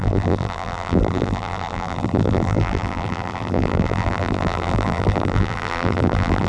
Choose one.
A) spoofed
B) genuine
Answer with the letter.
A